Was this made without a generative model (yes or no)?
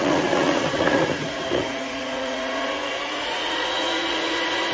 no